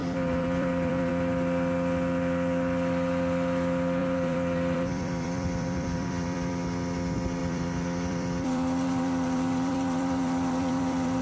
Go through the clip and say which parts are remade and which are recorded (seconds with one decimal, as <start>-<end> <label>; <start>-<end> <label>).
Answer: 0.0-1.1 remade; 1.1-4.0 recorded; 4.0-6.5 remade; 6.5-7.4 recorded; 7.4-11.2 remade